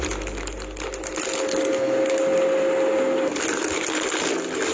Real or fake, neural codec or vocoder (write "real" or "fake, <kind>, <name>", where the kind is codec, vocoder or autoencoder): real